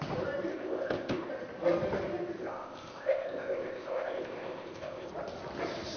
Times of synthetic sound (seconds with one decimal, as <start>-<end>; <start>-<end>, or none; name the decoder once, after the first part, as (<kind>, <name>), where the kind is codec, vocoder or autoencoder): 0.5-1.3 (codec, ZipCodec); 2.4-5.1